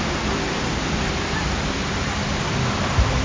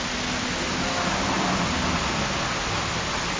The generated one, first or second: first